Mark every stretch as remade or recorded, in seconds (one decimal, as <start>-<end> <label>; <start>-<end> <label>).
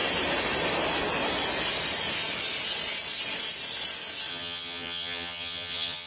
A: 0.0-4.3 recorded; 4.3-6.1 remade